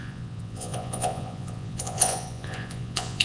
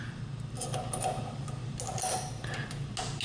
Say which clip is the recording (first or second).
second